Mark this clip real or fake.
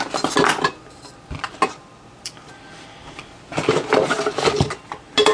real